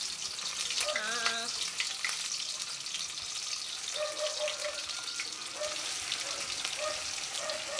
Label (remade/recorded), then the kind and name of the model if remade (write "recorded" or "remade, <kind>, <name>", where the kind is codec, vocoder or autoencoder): recorded